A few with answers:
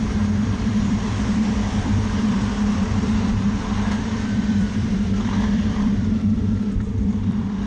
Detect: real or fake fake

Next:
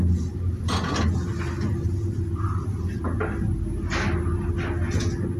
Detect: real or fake real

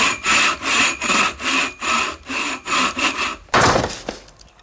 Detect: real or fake real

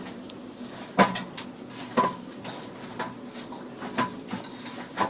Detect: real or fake real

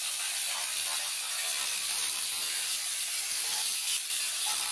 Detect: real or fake fake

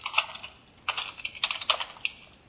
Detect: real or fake real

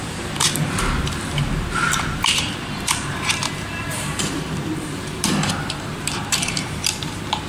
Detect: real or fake fake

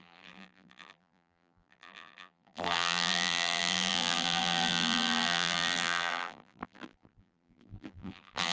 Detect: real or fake fake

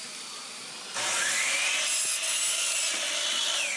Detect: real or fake real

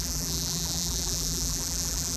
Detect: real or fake fake